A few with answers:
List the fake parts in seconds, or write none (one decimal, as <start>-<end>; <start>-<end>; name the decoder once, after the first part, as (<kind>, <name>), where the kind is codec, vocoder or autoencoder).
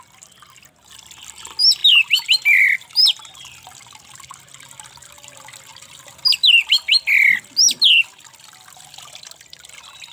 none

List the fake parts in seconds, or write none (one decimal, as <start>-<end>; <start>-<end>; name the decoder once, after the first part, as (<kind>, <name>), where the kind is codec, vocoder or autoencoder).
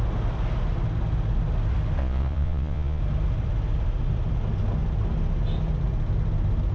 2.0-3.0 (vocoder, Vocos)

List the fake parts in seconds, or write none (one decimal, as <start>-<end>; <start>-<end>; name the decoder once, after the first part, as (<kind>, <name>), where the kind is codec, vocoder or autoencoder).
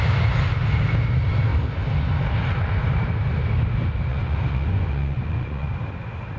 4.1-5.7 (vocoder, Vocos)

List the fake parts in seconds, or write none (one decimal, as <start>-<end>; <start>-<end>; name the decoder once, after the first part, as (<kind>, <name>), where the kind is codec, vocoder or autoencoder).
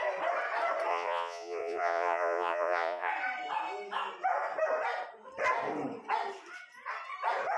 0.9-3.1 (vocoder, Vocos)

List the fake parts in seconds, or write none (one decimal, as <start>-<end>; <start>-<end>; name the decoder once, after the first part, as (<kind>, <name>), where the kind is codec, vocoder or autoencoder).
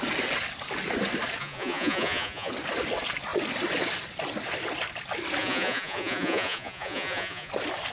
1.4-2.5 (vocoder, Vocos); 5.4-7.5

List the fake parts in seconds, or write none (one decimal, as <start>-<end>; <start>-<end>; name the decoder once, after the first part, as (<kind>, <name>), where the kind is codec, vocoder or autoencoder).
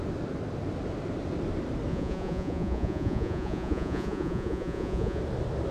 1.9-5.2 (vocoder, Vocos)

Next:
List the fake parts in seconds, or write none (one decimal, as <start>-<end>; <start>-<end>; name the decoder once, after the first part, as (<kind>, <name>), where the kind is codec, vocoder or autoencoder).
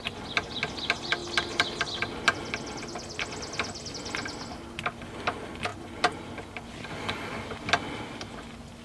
none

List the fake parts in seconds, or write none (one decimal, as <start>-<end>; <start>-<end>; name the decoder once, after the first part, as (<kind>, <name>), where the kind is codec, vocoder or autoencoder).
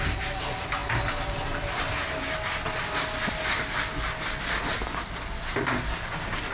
none